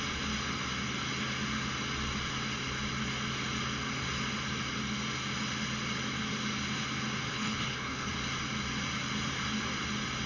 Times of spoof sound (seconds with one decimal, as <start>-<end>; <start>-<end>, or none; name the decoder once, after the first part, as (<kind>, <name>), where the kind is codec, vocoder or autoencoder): 7.3-8.1 (codec, HILCodec)